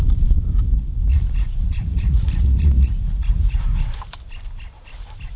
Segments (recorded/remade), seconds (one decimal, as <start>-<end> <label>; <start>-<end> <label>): 0.0-1.1 recorded; 1.1-3.6 remade; 3.6-5.4 recorded